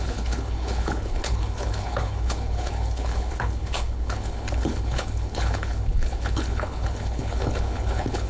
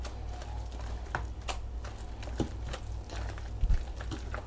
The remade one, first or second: first